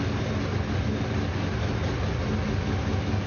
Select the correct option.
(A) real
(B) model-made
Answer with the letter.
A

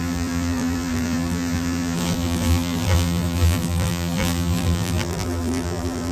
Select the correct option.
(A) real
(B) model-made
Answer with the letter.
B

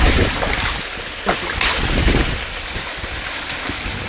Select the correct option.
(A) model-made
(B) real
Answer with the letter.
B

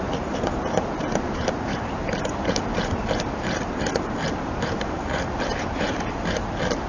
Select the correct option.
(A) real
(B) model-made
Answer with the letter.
B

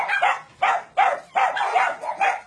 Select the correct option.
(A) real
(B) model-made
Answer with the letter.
A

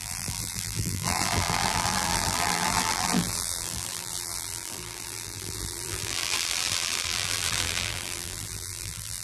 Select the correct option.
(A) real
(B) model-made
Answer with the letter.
B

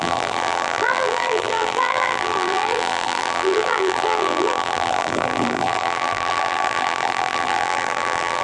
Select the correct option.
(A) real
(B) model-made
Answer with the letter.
B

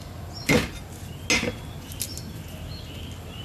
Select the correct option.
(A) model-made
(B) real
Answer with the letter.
B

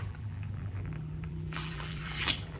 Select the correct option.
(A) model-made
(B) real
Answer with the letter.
A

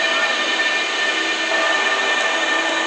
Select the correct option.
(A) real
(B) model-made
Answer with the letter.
A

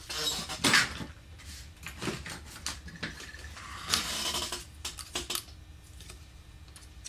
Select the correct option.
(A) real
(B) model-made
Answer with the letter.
A